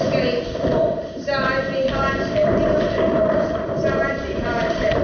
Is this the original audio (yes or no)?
yes